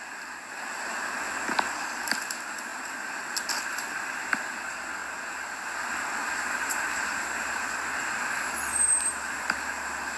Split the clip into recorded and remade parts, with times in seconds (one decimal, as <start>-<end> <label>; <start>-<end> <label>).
0.0-2.7 recorded; 2.7-3.2 remade; 3.2-6.2 recorded; 6.2-7.7 remade; 7.7-8.7 recorded; 8.7-9.6 remade; 9.6-10.2 recorded